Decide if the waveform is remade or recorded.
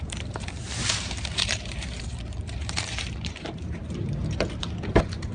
remade